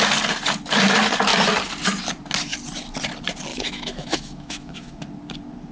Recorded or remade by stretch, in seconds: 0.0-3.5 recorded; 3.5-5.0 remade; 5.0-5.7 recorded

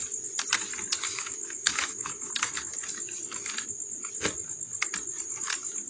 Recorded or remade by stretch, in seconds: 0.0-1.1 recorded; 1.1-2.3 remade; 2.3-5.9 recorded

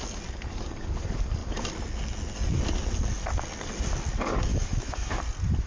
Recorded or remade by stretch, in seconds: 0.0-4.5 recorded; 4.5-5.2 remade; 5.2-5.7 recorded

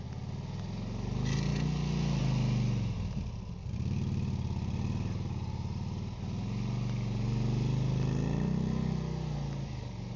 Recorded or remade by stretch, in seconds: 0.0-10.2 recorded

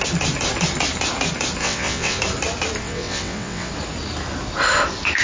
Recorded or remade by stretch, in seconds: 0.0-1.6 recorded; 1.6-2.2 remade; 2.2-2.8 recorded; 2.8-3.7 remade; 3.7-5.2 recorded